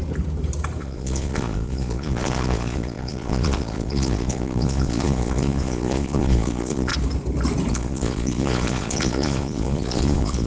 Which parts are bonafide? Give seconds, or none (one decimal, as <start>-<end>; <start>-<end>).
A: 0.0-0.8; 6.9-7.7